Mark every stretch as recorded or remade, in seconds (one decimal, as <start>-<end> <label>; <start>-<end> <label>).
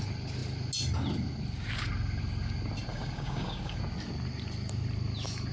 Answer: 0.0-2.9 recorded; 2.9-3.8 remade; 3.8-5.5 recorded